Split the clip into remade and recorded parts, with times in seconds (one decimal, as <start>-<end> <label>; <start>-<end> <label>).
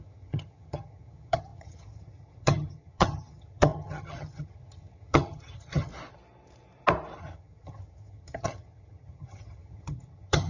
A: 0.0-5.9 remade; 5.9-7.2 recorded; 7.2-10.5 remade